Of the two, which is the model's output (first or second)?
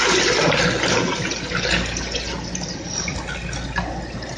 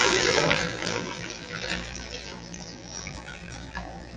second